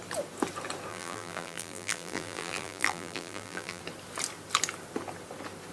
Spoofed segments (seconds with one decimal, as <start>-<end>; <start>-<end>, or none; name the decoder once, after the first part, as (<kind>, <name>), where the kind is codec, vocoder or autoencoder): 0.9-3.8 (vocoder, BigVGAN v2)